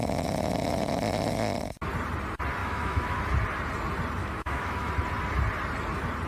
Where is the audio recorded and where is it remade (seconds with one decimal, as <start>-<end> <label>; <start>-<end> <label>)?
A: 0.0-2.6 recorded; 2.6-3.2 remade; 3.2-4.2 recorded; 4.2-4.9 remade; 4.9-6.3 recorded